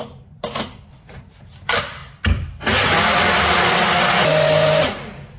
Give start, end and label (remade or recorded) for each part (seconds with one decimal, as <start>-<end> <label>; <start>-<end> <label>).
0.0-2.0 remade; 2.0-4.1 recorded; 4.1-5.4 remade